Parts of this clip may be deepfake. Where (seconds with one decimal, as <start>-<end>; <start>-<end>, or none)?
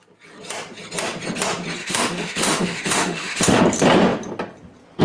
1.8-3.6